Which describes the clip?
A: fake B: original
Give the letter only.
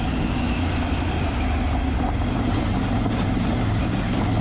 B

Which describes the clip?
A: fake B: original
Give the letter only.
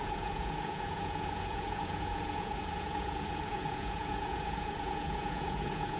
A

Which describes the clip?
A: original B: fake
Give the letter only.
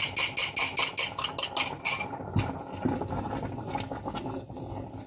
A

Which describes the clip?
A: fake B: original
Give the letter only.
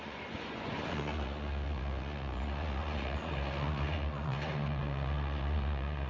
A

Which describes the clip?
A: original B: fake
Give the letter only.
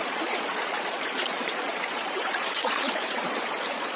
B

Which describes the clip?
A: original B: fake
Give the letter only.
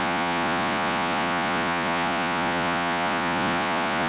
B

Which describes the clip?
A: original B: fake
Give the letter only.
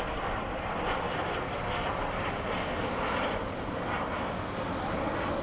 A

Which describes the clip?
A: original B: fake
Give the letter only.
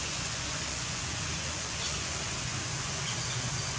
B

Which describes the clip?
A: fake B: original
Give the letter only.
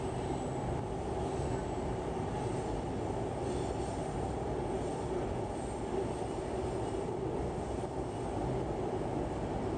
B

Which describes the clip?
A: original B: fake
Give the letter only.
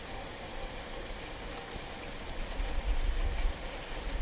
A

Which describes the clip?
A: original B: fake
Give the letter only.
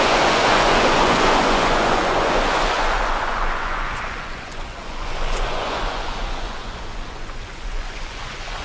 B